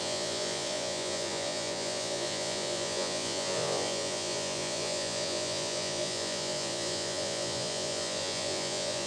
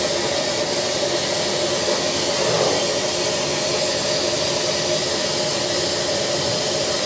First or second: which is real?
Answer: second